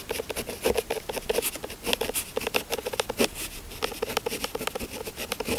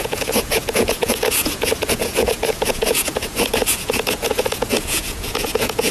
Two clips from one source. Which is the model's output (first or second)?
second